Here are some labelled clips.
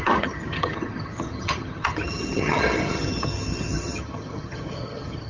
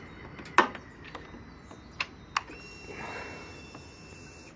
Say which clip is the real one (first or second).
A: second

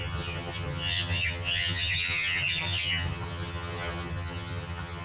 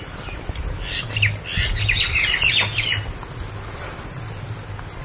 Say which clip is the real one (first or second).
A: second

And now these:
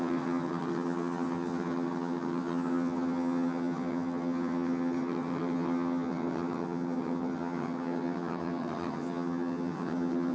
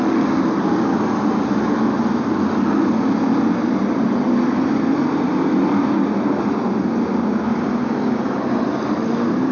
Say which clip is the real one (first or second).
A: second